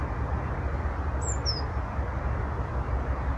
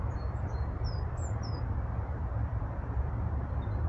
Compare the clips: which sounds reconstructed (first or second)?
second